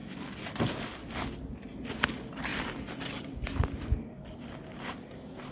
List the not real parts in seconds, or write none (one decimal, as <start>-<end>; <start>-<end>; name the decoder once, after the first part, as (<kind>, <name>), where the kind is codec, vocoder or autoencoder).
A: none

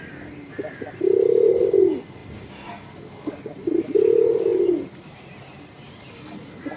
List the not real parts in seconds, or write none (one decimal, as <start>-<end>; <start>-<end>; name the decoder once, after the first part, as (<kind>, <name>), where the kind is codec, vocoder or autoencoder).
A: 4.5-6.1 (vocoder, BigVGAN v2)

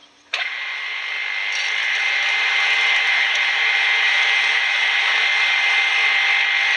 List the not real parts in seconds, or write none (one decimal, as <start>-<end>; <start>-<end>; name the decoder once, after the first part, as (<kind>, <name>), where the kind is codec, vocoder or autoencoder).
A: 0.0-0.8 (vocoder, BigVGAN v2); 1.8-5.9